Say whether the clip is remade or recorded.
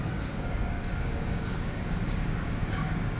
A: remade